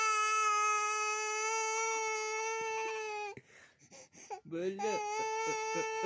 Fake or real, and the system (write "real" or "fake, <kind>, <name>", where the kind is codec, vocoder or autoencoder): real